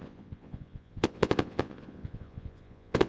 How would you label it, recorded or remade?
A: remade